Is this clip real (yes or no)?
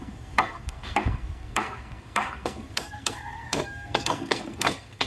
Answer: no